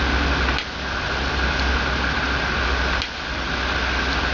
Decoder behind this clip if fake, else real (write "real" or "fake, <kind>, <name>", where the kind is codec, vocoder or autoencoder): real